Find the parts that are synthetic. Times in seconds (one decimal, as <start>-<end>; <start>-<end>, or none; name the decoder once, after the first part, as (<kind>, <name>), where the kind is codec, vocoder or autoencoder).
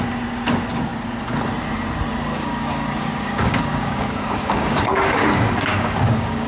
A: 2.3-6.5 (codec, DAC)